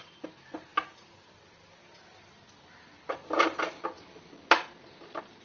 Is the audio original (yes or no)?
yes